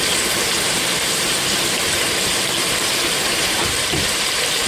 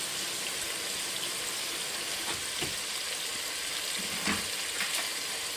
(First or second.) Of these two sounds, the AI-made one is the first